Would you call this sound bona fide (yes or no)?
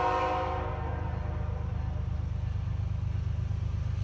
yes